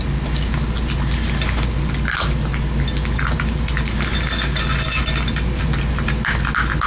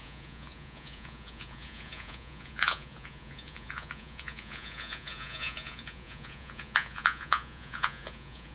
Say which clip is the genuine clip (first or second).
first